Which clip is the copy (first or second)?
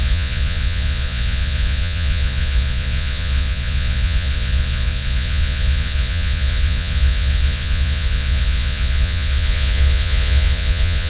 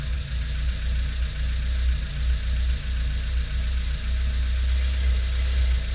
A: first